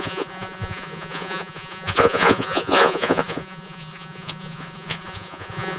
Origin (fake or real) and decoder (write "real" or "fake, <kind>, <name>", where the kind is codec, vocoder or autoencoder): fake, vocoder, Vocos